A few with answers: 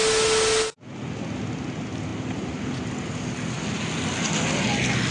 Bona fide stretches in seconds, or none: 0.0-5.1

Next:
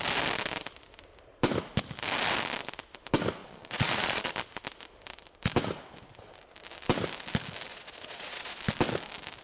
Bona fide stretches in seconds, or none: 0.0-3.4; 4.3-7.7; 8.6-9.4

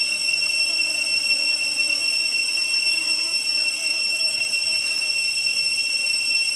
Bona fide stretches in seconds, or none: 0.0-3.8; 4.5-6.6

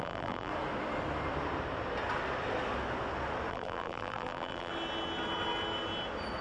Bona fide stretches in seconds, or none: 0.5-3.5; 4.7-6.4